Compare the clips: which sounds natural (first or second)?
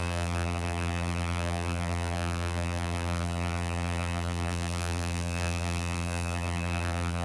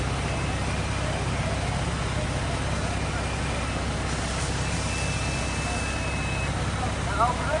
second